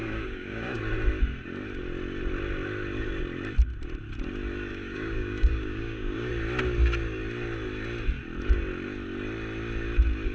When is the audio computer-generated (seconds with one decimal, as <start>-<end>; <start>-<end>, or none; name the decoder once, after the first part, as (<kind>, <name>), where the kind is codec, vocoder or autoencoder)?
0.0-0.8 (codec, DAC); 4.7-6.3